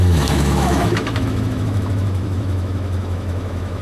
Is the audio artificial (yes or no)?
yes